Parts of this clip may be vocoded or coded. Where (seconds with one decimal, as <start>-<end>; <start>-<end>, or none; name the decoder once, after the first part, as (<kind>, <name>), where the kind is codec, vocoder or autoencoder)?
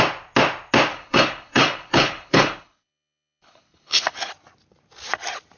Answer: 0.9-4.3 (codec, HILCodec)